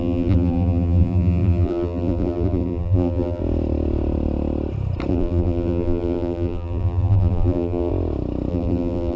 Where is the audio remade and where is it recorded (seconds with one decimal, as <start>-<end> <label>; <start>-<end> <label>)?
0.0-3.4 remade; 3.4-5.1 recorded; 5.1-7.9 remade; 7.9-8.5 recorded; 8.5-9.2 remade